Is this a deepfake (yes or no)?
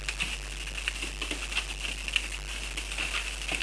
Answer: no